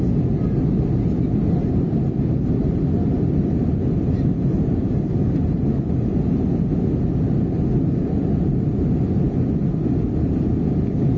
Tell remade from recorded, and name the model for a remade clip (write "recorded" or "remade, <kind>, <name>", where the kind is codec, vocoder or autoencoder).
recorded